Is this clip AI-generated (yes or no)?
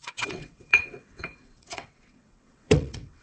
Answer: yes